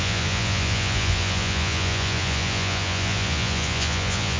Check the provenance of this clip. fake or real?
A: fake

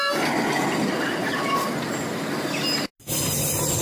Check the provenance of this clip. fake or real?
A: real